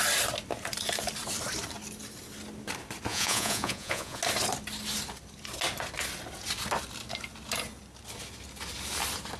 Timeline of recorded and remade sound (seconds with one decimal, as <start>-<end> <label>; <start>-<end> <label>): 0.0-3.1 recorded; 3.1-4.2 remade; 4.2-9.4 recorded